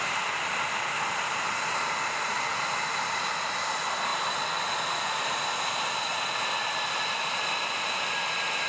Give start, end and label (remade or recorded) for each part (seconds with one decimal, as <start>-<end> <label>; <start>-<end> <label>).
0.0-8.7 recorded